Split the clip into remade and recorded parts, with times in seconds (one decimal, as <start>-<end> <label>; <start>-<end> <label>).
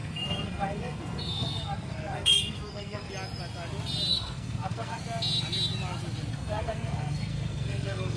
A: 0.0-3.1 remade; 3.1-4.1 recorded; 4.1-5.0 remade; 5.0-6.3 recorded; 6.3-8.2 remade